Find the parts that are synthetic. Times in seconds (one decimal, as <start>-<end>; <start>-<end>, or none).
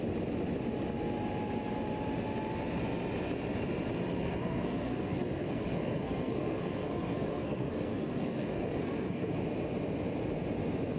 4.2-9.3